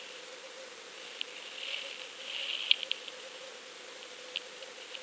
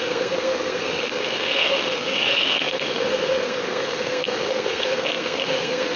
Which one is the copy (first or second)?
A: second